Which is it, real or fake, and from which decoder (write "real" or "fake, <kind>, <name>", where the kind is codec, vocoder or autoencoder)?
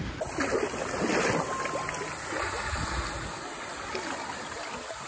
real